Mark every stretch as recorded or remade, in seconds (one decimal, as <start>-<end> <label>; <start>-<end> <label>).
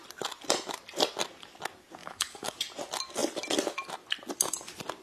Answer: 0.0-2.0 recorded; 2.0-2.6 remade; 2.6-5.0 recorded